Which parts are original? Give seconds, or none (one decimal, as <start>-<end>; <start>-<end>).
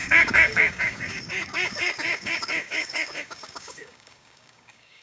none